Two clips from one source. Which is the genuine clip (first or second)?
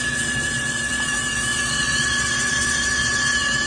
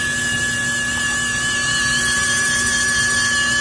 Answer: second